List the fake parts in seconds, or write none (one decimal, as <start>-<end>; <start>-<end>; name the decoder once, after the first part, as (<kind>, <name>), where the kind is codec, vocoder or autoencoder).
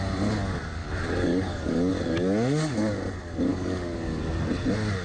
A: 0.8-1.9 (codec, DAC); 3.5-4.2